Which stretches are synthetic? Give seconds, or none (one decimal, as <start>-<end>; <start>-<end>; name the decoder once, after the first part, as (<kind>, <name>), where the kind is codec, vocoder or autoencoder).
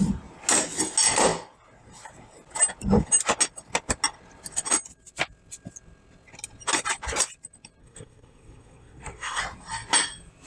7.8-9.4 (codec, SNAC)